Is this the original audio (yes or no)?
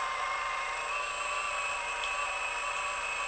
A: yes